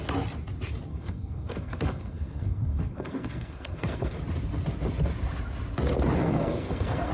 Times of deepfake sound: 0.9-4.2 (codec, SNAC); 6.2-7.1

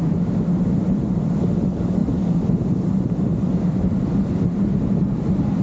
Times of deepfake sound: none

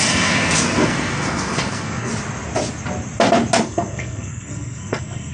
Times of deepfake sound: 0.0-2.1 (codec, SNAC); 3.6-5.3

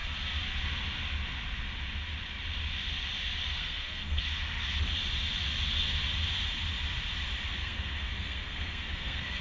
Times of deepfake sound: 3.5-4.2 (codec, SNAC); 7.6-9.4

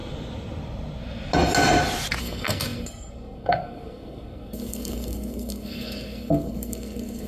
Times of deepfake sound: 2.2-7.3 (codec, SNAC)

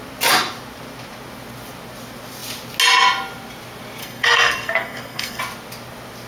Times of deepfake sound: 4.0-5.4 (codec, SNAC)